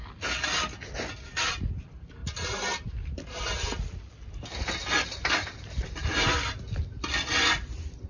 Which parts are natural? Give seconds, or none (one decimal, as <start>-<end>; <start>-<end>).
0.0-1.5; 2.2-7.1